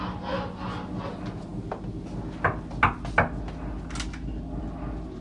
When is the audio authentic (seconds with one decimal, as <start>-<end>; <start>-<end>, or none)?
0.0-5.2

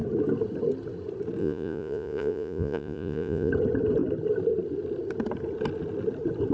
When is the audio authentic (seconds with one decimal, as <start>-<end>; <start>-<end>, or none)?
0.0-1.4; 3.5-6.5

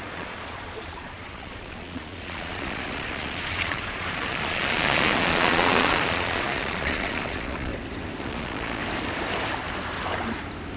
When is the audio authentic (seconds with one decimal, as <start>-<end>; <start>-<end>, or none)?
7.7-8.2; 8.8-10.8

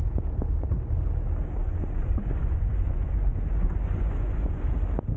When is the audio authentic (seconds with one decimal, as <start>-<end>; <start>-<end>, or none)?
0.0-1.6; 4.7-5.2

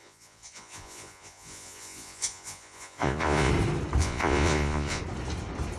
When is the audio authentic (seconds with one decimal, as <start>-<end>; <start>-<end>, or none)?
3.5-4.0; 5.0-5.8

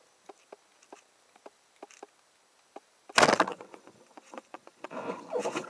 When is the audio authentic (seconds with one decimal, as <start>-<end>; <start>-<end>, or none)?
0.0-3.5

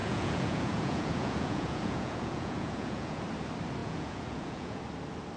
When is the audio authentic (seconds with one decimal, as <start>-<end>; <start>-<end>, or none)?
3.2-3.8; 4.8-5.4